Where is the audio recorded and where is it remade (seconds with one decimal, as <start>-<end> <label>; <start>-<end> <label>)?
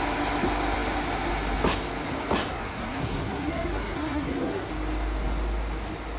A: 0.0-2.5 recorded; 2.5-4.7 remade; 4.7-6.2 recorded